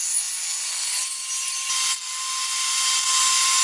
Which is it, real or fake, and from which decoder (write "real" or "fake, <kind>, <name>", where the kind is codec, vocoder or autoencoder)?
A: real